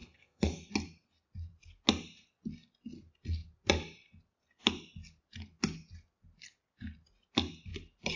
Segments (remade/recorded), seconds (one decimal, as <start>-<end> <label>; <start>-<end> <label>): 0.0-0.7 remade; 0.7-8.2 recorded